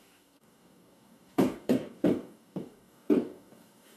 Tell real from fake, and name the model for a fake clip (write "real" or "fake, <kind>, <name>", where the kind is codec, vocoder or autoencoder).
fake, codec, DAC